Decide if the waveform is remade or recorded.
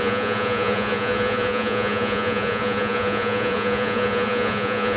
remade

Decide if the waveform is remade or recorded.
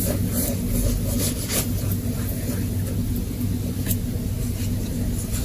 recorded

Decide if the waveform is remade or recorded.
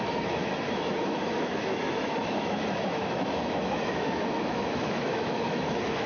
remade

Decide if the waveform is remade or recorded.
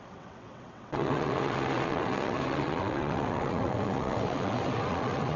remade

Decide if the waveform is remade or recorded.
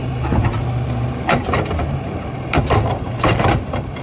remade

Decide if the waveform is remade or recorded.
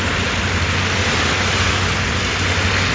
recorded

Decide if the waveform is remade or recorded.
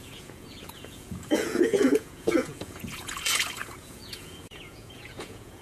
remade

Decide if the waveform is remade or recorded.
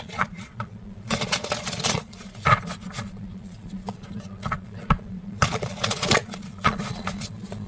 remade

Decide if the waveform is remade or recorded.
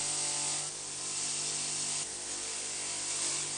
recorded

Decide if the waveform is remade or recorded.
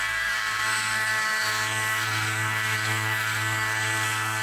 remade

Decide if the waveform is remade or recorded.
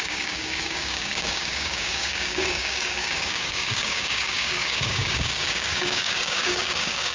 remade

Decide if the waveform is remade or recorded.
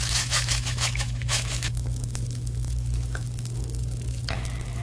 remade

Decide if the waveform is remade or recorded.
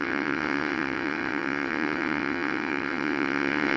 remade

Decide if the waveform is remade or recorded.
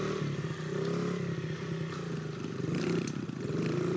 recorded